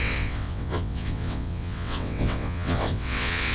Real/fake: fake